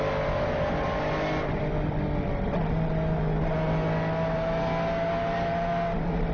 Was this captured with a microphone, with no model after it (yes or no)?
yes